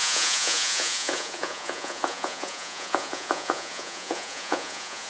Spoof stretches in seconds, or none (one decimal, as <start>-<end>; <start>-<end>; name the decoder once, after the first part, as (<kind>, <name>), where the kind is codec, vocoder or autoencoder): 0.0-5.1 (vocoder, Vocos)